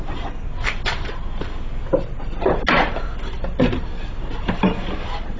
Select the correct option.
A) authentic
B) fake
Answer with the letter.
A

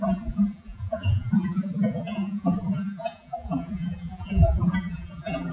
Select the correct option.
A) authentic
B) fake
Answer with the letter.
B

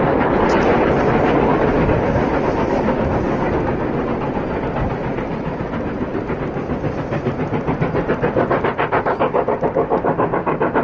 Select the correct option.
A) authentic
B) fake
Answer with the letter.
A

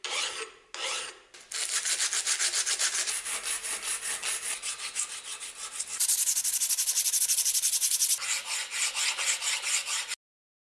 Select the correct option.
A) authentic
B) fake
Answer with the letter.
A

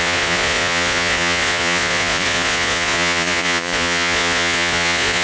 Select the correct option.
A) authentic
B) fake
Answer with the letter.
B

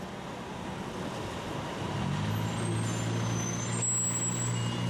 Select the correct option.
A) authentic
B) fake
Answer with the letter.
A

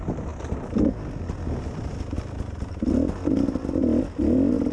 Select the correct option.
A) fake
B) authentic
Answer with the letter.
B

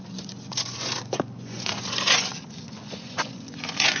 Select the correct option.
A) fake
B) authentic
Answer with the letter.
A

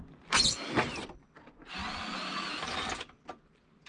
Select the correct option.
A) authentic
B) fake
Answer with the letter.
A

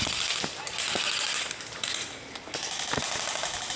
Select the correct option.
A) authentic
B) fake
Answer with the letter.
A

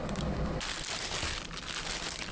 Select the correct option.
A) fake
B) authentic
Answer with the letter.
B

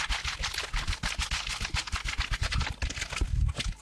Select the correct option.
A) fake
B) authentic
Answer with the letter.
B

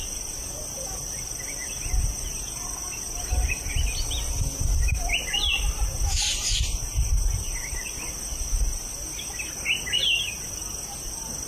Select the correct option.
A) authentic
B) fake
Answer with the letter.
A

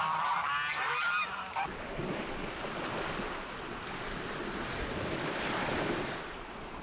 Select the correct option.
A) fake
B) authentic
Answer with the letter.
A